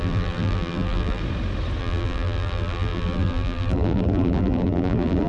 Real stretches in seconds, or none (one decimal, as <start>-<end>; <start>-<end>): 1.2-1.8